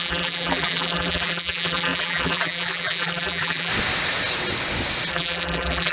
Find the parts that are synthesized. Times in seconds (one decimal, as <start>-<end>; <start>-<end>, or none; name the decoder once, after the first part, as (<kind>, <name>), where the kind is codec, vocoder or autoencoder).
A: 0.0-3.7 (vocoder, BigVGAN v2); 5.1-5.9